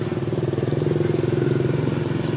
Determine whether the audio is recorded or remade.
recorded